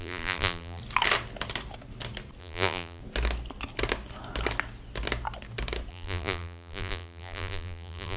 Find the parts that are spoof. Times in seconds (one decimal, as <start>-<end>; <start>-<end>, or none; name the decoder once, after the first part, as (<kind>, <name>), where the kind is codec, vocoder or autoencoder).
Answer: 0.0-0.8 (vocoder, BigVGAN v2); 2.4-3.0; 5.9-8.2